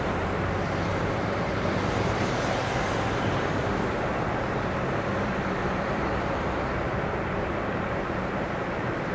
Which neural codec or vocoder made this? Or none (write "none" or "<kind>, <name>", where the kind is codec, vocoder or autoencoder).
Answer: vocoder, BigVGAN v2